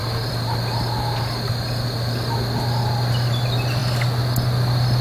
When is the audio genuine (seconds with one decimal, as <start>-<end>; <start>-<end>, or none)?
0.0-5.0